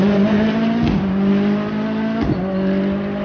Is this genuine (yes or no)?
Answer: yes